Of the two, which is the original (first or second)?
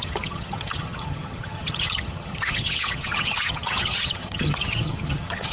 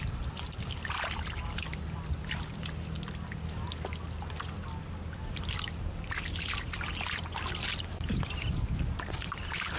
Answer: second